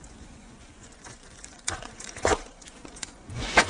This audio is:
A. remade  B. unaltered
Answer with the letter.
A